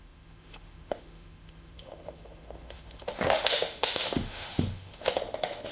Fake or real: fake